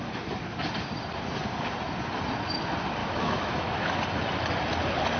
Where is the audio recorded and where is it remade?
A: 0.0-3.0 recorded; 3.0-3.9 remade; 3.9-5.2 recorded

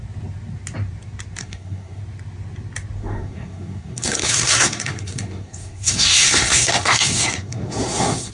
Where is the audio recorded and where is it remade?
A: 0.0-1.4 recorded; 1.4-2.0 remade; 2.0-3.0 recorded; 3.0-8.3 remade

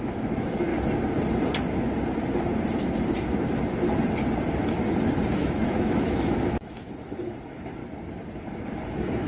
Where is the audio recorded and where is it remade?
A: 0.0-0.7 remade; 0.7-5.3 recorded; 5.3-7.8 remade; 7.8-8.9 recorded; 8.9-9.3 remade

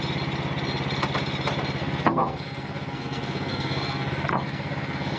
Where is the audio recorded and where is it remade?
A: 0.0-1.8 recorded; 1.8-5.2 remade

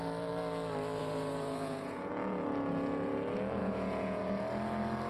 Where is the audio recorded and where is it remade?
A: 0.0-1.0 recorded; 1.0-2.1 remade; 2.1-3.6 recorded; 3.6-4.2 remade; 4.2-5.1 recorded

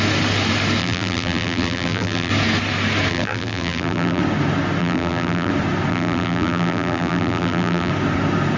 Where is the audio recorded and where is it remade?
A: 0.0-0.8 recorded; 0.8-2.3 remade; 2.3-3.1 recorded; 3.1-4.2 remade; 4.2-4.8 recorded; 4.8-5.5 remade; 5.5-5.9 recorded; 5.9-7.9 remade; 7.9-8.6 recorded